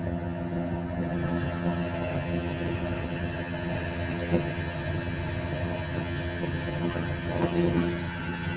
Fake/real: fake